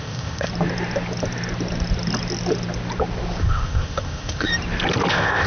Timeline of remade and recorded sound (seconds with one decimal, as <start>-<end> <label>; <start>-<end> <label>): 0.0-0.5 remade; 0.5-3.4 recorded; 3.4-4.5 remade; 4.5-5.1 recorded; 5.1-5.5 remade